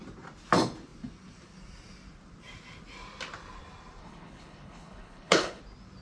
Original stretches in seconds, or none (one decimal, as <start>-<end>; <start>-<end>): 0.0-4.0; 5.6-6.0

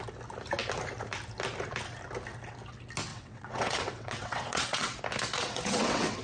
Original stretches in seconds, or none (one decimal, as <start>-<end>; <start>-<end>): 0.0-3.1; 5.0-5.4

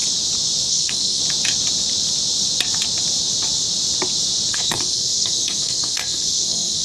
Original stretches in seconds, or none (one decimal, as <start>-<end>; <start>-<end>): 0.0-0.7; 1.2-4.5

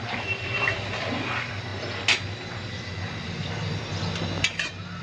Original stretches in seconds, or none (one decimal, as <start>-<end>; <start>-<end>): 0.0-5.0

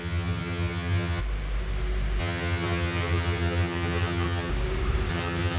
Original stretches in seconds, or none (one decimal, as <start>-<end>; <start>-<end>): 1.2-2.2; 4.5-5.1

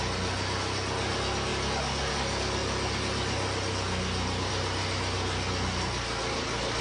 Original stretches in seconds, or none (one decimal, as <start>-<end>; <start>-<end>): 0.0-6.8